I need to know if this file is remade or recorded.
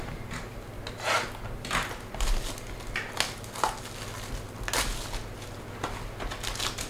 recorded